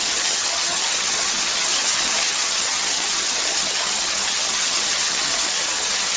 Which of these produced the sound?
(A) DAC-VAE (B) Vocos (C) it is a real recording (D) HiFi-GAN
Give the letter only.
D